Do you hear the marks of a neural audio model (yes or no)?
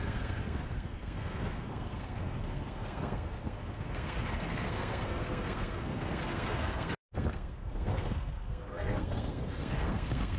yes